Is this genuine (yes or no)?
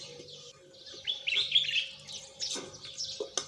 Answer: yes